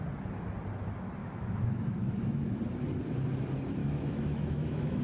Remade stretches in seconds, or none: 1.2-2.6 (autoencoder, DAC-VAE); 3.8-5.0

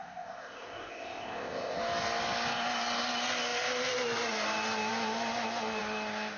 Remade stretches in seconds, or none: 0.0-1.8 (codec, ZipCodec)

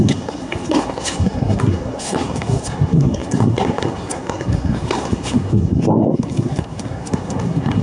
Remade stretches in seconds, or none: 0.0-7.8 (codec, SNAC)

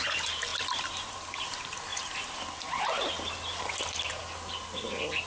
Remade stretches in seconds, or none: none

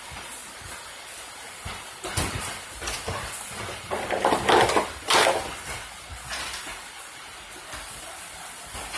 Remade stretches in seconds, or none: none

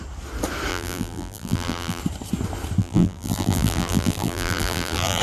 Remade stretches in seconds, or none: 0.7-2.0 (vocoder, BigVGAN v2); 2.8-5.2